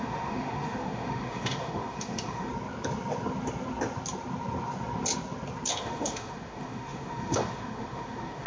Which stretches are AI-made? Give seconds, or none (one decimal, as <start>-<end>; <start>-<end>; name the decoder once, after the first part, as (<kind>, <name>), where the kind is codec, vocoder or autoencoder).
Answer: 0.0-2.5 (autoencoder, DAC-VAE); 5.7-8.5